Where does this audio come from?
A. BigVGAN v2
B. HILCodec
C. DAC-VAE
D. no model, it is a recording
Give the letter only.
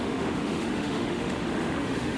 C